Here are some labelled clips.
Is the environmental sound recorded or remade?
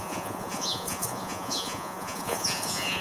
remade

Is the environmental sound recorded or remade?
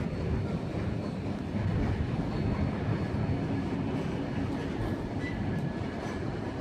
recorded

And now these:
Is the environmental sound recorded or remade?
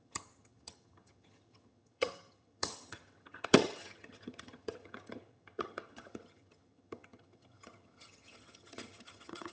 remade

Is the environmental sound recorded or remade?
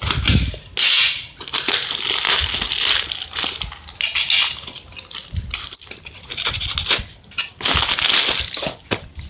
recorded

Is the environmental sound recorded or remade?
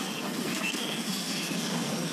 remade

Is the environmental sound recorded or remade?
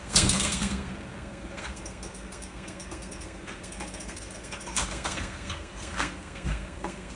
remade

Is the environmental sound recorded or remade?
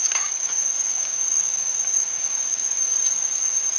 remade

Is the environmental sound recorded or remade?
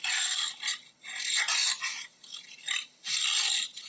recorded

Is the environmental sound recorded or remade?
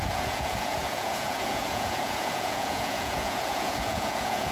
remade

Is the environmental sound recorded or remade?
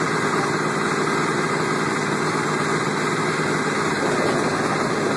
recorded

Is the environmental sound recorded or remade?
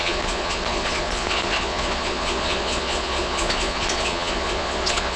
remade